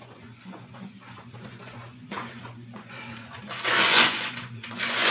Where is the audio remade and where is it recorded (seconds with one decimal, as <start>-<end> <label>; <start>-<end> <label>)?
0.0-5.1 remade